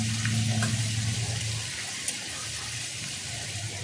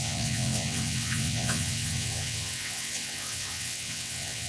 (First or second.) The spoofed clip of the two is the second